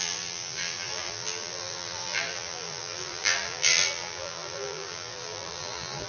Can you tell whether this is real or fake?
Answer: fake